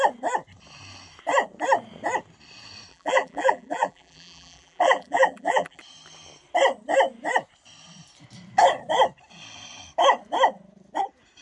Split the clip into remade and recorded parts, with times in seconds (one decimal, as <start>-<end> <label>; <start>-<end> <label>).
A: 0.0-2.9 recorded; 2.9-5.8 remade; 5.8-11.4 recorded